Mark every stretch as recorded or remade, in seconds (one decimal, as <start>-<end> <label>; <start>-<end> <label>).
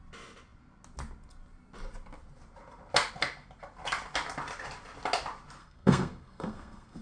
0.0-5.6 recorded; 5.6-7.0 remade